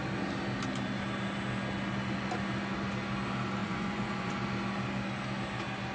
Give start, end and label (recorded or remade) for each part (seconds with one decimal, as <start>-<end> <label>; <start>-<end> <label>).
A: 0.0-3.6 recorded; 3.6-4.3 remade; 4.3-5.9 recorded